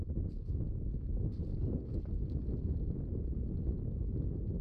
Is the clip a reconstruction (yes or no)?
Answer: no